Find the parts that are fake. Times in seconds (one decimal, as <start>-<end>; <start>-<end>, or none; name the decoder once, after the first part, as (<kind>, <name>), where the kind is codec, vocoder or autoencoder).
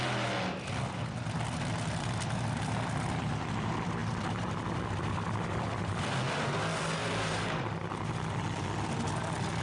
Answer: 7.0-7.5 (vocoder, BigVGAN v2)